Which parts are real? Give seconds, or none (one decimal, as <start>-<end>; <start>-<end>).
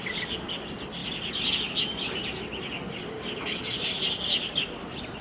0.0-5.2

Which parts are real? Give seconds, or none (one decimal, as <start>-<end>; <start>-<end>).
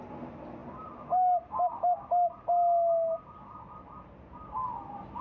0.0-5.2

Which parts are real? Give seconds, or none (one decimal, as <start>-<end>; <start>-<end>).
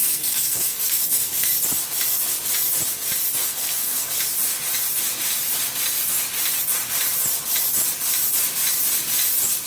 1.5-3.4; 4.1-9.7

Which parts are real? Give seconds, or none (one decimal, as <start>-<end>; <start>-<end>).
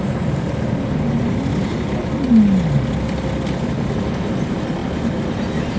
0.0-4.8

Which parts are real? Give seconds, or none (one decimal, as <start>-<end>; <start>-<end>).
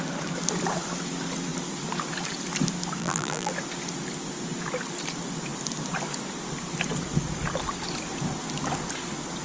0.0-3.0; 3.5-9.4